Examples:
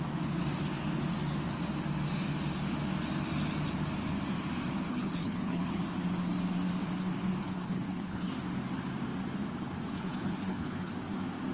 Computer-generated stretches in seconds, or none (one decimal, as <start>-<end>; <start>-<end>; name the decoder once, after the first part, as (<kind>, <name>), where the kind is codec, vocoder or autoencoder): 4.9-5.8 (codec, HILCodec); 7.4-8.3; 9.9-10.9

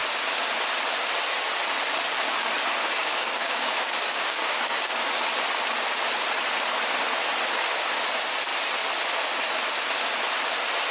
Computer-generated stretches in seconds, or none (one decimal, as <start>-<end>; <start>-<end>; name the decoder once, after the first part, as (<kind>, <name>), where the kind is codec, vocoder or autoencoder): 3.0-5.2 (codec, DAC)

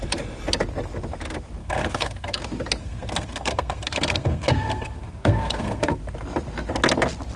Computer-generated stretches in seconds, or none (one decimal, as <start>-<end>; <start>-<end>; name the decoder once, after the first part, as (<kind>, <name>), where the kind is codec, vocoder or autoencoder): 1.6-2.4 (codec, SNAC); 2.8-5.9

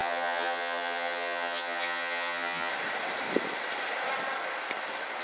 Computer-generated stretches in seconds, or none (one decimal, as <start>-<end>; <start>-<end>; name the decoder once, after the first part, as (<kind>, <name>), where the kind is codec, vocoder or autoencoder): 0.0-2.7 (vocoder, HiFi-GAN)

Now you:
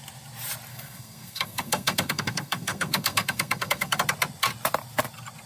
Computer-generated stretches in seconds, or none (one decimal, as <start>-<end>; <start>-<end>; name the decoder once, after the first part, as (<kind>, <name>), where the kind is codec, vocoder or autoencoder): 0.7-4.0 (codec, SNAC)

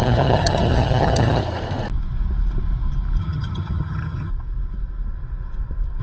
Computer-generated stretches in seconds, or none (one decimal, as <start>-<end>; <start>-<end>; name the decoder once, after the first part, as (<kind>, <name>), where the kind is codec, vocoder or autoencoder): 0.0-1.4 (vocoder, HiFi-GAN); 3.2-4.3

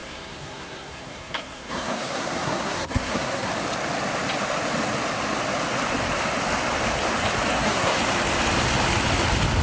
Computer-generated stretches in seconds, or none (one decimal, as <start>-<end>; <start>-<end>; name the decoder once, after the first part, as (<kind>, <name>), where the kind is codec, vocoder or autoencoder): 0.0-3.5 (codec, SNAC); 7.5-8.0

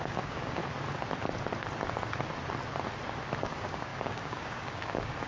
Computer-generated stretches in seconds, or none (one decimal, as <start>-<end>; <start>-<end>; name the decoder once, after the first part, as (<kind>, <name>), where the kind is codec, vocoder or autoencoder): 0.0-0.6 (codec, DAC); 3.4-5.3